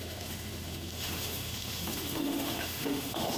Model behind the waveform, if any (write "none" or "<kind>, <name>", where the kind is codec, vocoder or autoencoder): autoencoder, DAC-VAE